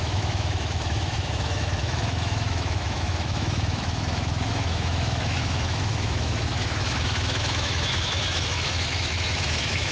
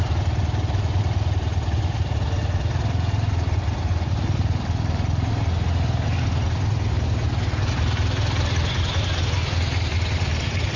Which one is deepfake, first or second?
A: first